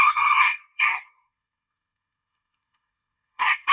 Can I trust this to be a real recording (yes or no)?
no